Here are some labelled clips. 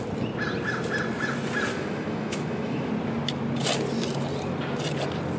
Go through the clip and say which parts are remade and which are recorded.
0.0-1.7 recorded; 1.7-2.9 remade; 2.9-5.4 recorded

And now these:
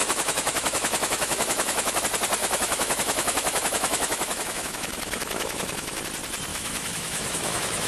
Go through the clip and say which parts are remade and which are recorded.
0.0-2.0 remade; 2.0-2.4 recorded; 2.4-6.0 remade; 6.0-6.5 recorded; 6.5-7.9 remade

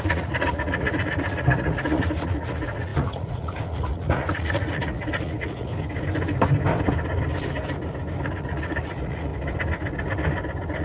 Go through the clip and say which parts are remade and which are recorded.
0.0-5.7 remade; 5.7-8.2 recorded; 8.2-9.3 remade; 9.3-10.8 recorded

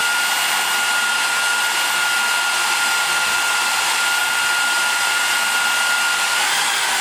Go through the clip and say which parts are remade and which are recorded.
0.0-7.0 recorded

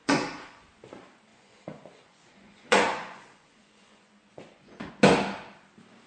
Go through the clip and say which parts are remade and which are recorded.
0.0-0.8 remade; 0.8-1.3 recorded; 1.3-4.9 remade; 4.9-6.1 recorded